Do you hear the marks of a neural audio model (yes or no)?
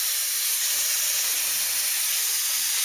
no